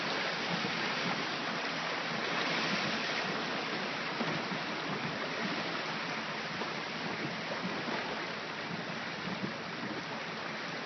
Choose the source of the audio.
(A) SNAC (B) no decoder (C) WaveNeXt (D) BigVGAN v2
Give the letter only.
B